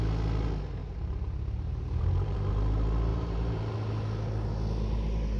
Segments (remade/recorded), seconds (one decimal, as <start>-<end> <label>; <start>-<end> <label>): 0.0-0.8 recorded; 0.8-2.5 remade; 2.5-3.1 recorded; 3.1-3.6 remade; 3.6-5.4 recorded

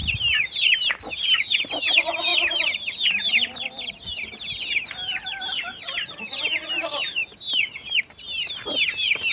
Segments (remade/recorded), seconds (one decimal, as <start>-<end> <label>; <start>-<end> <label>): 0.0-2.3 recorded; 2.3-3.3 remade; 3.3-9.3 recorded